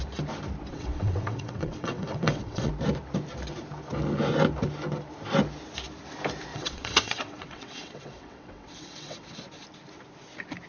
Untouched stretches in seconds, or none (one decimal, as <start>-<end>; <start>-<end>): 0.0-0.7; 2.7-6.5; 9.4-10.7